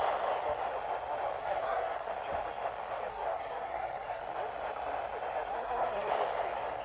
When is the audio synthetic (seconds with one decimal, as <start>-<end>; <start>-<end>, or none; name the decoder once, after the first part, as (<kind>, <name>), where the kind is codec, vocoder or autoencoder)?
1.4-2.1 (codec, SNAC); 3.1-4.2; 5.5-6.1